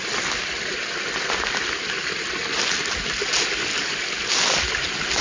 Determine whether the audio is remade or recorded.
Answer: recorded